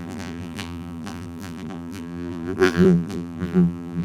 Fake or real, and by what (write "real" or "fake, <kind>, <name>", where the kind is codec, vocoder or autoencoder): fake, vocoder, BigVGAN v2